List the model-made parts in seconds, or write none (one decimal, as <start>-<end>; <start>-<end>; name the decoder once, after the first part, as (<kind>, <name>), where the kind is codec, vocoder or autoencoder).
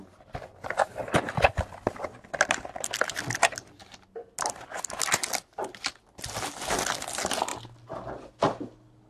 0.5-1.0 (vocoder, BigVGAN v2)